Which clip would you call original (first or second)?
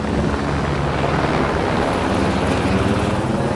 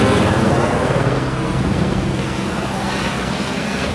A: first